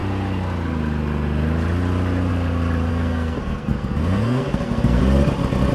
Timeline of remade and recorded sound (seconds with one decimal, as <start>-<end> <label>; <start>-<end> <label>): 0.0-2.9 recorded; 2.9-5.0 remade; 5.0-5.7 recorded